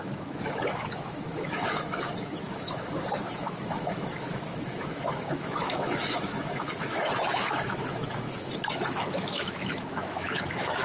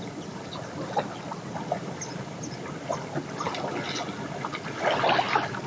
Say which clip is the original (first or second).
second